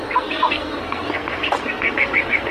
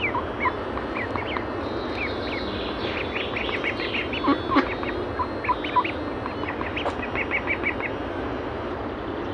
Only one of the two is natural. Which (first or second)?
second